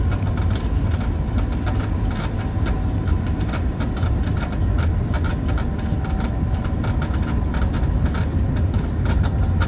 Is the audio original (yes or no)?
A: yes